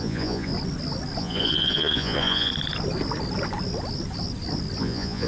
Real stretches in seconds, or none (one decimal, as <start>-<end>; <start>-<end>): 0.5-1.2; 2.5-4.8

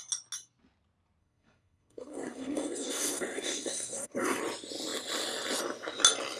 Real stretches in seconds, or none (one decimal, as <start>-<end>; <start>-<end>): 0.0-1.2; 4.4-6.4

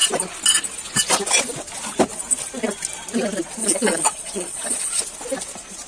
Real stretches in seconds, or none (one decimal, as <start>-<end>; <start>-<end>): 0.0-3.6; 5.0-5.9

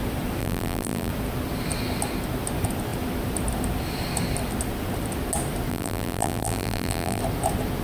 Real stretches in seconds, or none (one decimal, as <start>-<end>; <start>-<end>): 0.0-0.4; 1.1-5.7; 7.2-7.8

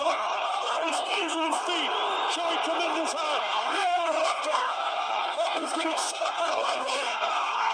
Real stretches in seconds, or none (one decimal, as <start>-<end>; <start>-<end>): 1.6-3.4